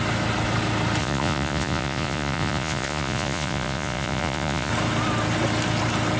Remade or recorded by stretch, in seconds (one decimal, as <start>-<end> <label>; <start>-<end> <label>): 0.0-1.0 recorded; 1.0-4.7 remade; 4.7-6.2 recorded